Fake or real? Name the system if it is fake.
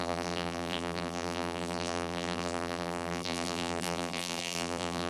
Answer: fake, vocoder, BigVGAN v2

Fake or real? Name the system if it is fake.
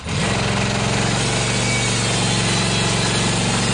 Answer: real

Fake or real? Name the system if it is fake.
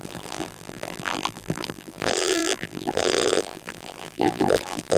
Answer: fake, vocoder, BigVGAN v2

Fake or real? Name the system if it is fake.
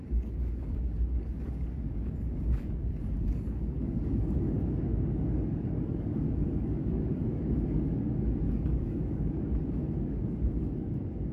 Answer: fake, codec, DAC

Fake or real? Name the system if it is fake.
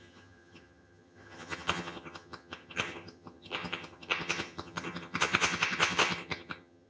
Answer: fake, vocoder, HiFi-GAN